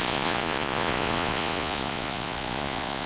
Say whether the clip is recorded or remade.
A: remade